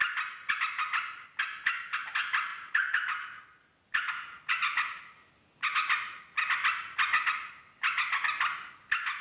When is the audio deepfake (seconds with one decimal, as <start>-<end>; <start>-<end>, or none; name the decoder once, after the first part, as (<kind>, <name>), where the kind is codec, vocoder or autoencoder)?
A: none